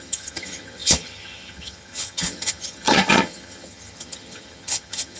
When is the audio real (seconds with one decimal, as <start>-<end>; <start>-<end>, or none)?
none